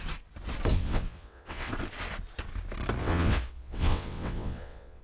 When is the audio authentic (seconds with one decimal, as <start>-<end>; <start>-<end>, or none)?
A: 0.0-0.7; 1.7-3.0